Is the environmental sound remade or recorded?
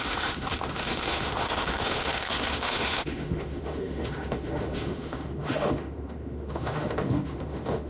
remade